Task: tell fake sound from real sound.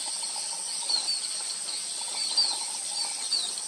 real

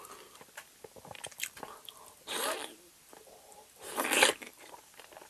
fake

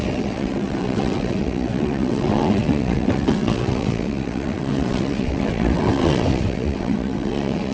fake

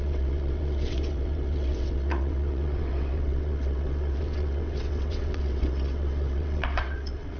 fake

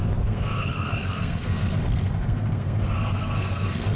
fake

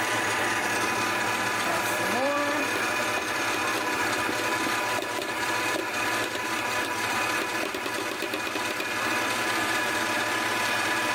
fake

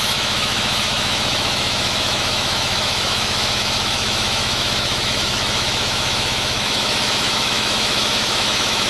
fake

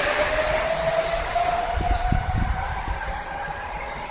real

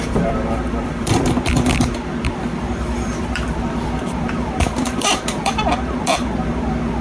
fake